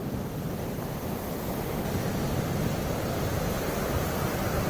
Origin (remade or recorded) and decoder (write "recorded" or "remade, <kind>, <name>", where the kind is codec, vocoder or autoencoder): recorded